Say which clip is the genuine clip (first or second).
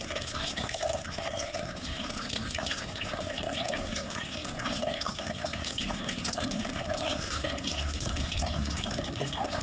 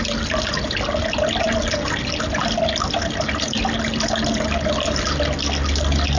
second